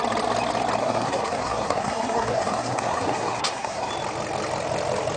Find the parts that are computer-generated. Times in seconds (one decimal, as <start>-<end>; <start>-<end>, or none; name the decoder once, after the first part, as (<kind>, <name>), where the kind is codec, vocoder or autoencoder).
0.8-3.9 (codec, SNAC)